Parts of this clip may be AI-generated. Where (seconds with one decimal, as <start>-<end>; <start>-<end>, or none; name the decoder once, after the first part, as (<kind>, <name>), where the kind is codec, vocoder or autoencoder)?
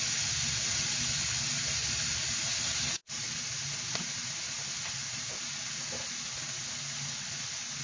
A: 2.5-3.2 (vocoder, BigVGAN v2); 5.0-6.0